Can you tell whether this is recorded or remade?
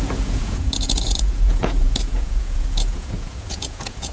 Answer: remade